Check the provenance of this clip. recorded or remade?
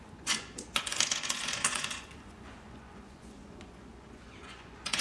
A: remade